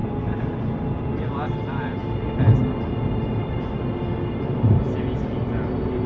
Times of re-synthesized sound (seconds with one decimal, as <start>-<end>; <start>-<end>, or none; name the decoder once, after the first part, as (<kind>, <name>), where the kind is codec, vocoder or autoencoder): none